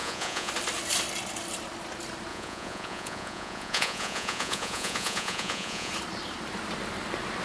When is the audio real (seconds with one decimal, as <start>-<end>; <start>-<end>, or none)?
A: 0.5-2.3; 5.9-7.4